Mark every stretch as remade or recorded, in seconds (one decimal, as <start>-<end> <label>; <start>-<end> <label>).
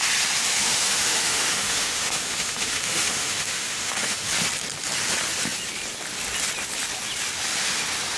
0.0-0.5 recorded; 0.5-4.3 remade; 4.3-8.2 recorded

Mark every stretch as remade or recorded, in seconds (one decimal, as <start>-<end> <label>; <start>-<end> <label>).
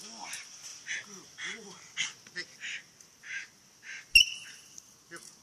0.0-5.4 recorded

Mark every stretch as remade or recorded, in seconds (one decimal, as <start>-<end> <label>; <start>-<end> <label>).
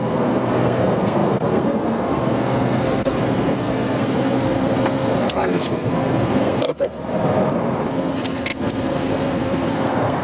0.0-7.0 remade; 7.0-7.9 recorded; 7.9-10.2 remade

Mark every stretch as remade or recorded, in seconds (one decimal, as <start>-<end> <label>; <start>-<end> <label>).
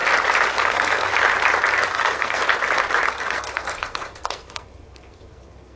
0.0-0.5 recorded; 0.5-1.1 remade; 1.1-1.9 recorded; 1.9-2.4 remade; 2.4-3.1 recorded; 3.1-5.8 remade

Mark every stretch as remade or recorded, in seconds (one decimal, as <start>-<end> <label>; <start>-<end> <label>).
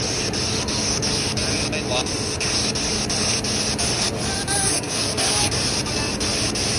0.0-4.6 recorded; 4.6-5.5 remade; 5.5-6.8 recorded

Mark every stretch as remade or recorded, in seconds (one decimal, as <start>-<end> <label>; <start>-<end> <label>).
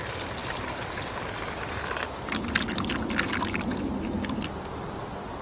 0.0-5.4 recorded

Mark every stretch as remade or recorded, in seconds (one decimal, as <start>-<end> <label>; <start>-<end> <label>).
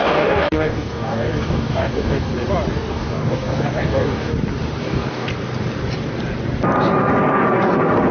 0.0-2.3 remade; 2.3-2.9 recorded; 2.9-4.3 remade; 4.3-4.8 recorded; 4.8-5.3 remade; 5.3-8.1 recorded